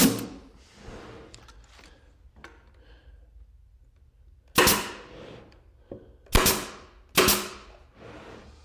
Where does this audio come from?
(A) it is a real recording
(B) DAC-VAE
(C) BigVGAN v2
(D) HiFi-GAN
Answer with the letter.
A